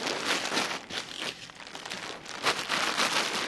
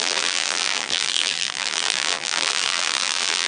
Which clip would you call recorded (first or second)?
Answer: first